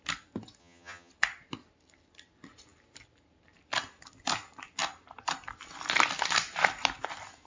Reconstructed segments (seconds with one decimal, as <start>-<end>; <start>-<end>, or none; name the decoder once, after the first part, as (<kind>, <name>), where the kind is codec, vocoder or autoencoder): 0.6-1.1 (vocoder, HiFi-GAN)